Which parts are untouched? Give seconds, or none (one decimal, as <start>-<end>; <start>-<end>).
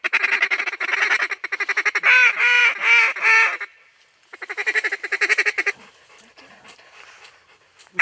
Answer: 0.0-8.0